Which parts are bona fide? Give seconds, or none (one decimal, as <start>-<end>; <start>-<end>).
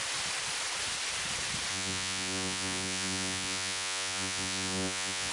0.0-1.7